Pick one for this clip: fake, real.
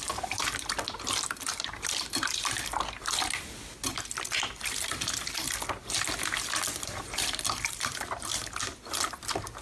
real